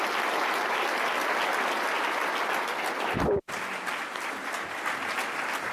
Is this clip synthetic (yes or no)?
no